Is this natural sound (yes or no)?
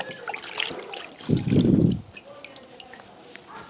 yes